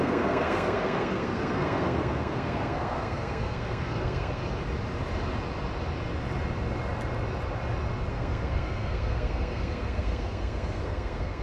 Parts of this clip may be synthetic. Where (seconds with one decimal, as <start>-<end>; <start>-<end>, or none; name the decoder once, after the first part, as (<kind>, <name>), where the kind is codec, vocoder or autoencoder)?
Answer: 0.0-4.4 (codec, SNAC); 8.1-11.4